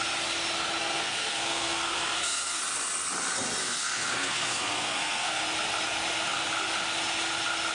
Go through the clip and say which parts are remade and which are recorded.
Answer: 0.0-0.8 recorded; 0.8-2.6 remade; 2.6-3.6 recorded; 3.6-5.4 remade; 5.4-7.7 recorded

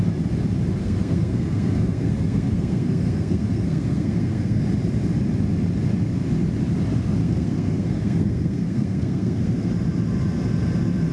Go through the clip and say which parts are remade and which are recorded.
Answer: 0.0-0.8 recorded; 0.8-4.6 remade; 4.6-7.2 recorded; 7.2-9.7 remade; 9.7-11.1 recorded

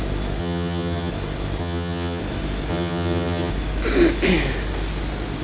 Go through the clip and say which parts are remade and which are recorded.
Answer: 0.0-0.4 recorded; 0.4-1.1 remade; 1.1-1.6 recorded; 1.6-2.2 remade; 2.2-2.7 recorded; 2.7-3.5 remade; 3.5-5.4 recorded

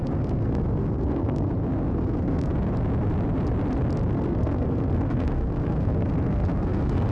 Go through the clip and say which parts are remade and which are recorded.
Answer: 0.0-1.5 remade; 1.5-1.9 recorded; 1.9-2.5 remade; 2.5-4.1 recorded; 4.1-7.1 remade